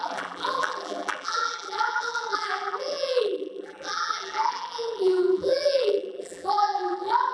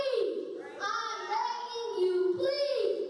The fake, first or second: first